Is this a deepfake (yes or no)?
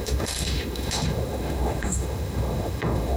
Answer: yes